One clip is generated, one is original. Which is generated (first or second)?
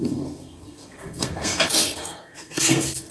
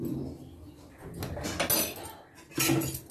first